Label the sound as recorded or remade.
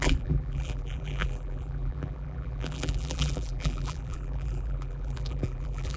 remade